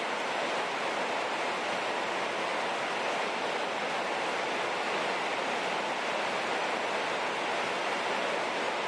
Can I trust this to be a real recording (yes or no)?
yes